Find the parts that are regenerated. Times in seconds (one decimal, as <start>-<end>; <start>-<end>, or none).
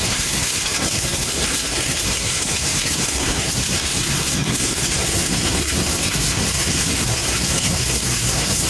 0.0-8.7